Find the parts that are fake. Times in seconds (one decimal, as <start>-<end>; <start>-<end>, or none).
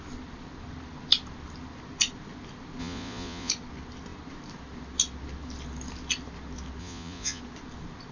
2.8-3.5; 6.8-7.4